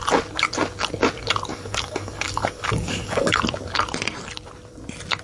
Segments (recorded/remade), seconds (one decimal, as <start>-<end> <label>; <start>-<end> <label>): 0.0-1.5 recorded; 1.5-3.4 remade; 3.4-5.2 recorded